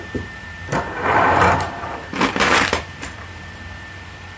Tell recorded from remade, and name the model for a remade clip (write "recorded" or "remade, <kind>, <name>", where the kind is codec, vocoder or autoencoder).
remade, vocoder, BigVGAN v2